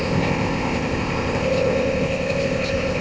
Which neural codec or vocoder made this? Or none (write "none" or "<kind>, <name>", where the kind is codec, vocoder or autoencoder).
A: codec, ZipCodec